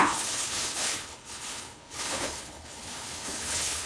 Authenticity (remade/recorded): remade